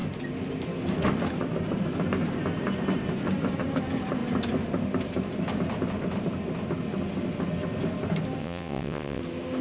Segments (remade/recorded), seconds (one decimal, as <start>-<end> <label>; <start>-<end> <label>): 0.0-8.4 recorded; 8.4-9.2 remade; 9.2-9.6 recorded